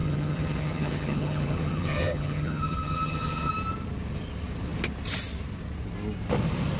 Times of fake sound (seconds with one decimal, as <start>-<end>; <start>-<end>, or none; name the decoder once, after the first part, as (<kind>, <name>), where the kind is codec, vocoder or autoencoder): 0.0-3.5 (vocoder, HiFi-GAN)

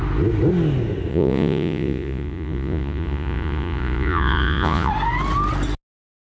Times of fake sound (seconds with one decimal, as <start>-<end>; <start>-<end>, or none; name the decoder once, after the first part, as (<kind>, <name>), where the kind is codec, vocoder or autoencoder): 1.1-4.9 (vocoder, Vocos)

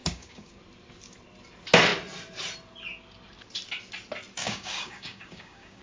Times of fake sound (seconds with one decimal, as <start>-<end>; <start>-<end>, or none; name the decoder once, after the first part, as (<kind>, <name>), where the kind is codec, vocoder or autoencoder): 0.0-0.6 (codec, DAC); 4.4-5.8

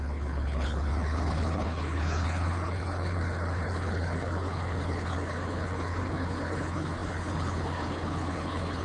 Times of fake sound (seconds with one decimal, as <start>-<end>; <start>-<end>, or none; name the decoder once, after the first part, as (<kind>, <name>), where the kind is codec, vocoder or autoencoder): 0.0-8.8 (codec, HILCodec)